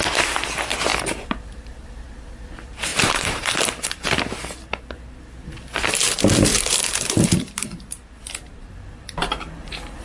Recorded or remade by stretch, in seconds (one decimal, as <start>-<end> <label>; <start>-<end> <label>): 0.0-0.9 recorded; 0.9-1.9 remade; 1.9-2.9 recorded; 2.9-4.0 remade; 4.0-6.5 recorded; 6.5-10.0 remade